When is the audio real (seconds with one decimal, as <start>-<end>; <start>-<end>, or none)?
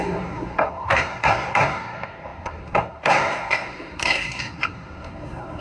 none